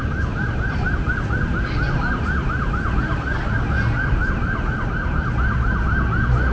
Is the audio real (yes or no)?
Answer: yes